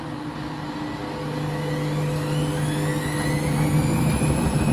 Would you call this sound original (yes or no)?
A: yes